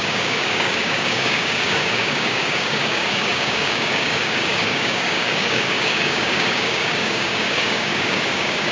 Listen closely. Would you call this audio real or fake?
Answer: fake